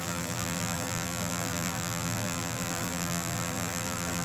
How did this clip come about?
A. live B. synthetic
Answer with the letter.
B